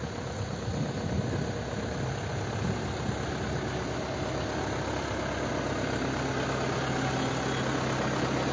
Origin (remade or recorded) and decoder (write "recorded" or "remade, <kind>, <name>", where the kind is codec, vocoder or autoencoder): recorded